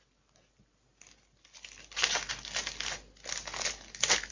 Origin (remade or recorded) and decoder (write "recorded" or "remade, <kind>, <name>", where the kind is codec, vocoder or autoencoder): recorded